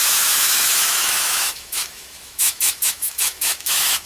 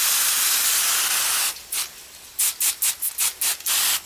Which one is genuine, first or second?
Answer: second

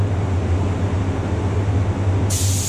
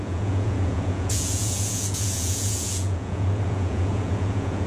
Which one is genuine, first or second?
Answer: first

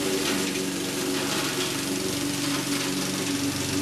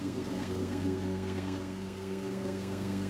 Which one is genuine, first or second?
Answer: first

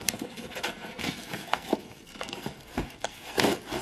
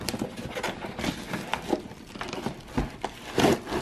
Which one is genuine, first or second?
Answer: second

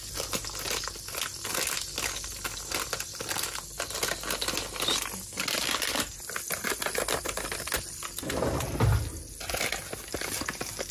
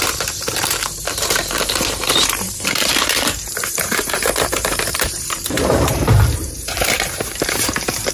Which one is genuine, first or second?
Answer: first